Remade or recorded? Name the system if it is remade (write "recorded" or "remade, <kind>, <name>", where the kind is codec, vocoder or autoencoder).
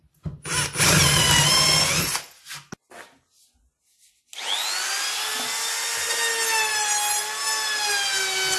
recorded